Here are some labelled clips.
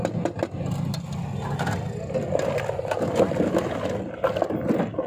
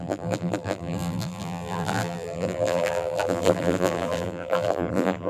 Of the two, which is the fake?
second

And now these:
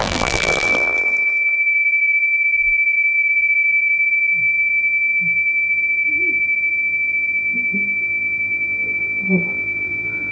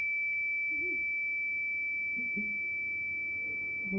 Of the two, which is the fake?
first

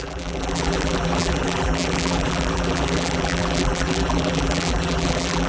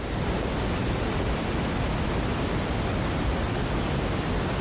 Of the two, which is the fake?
first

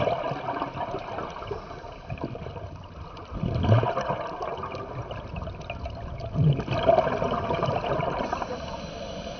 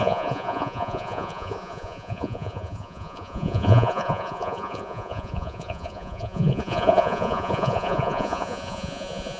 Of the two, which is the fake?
second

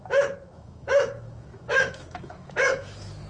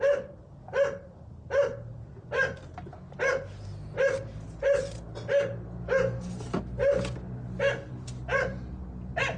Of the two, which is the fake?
first